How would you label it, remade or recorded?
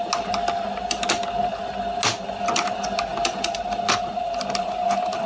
recorded